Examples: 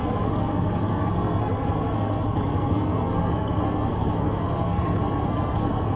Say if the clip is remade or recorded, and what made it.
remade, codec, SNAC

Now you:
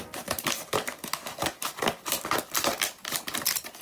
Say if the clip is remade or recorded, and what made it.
recorded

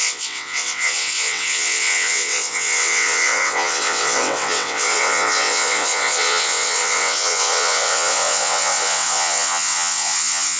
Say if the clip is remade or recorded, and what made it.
remade, vocoder, WaveNeXt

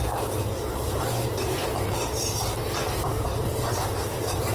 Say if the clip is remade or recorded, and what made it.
remade, vocoder, BigVGAN v2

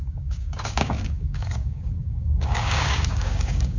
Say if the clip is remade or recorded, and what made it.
remade, codec, DAC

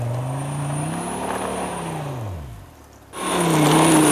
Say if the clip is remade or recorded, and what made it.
recorded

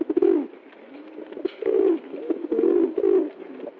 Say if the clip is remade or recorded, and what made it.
recorded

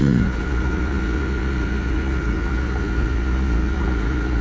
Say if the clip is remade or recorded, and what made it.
remade, vocoder, Vocos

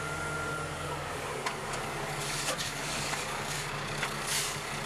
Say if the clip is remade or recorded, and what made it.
remade, codec, DAC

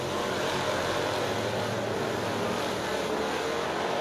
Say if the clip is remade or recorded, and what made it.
recorded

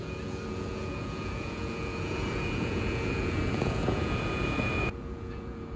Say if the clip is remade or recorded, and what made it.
remade, vocoder, Vocos